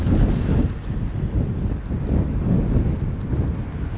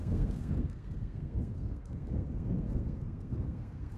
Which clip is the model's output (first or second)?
second